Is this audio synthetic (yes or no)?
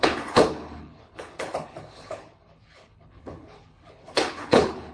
yes